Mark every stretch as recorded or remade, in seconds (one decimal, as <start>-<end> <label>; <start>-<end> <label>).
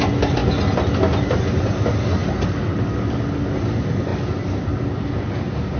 0.0-5.8 recorded